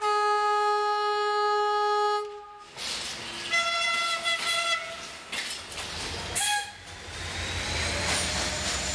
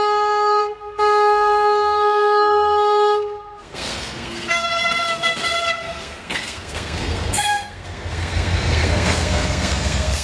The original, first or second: first